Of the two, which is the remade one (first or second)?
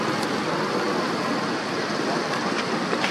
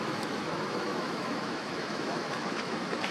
second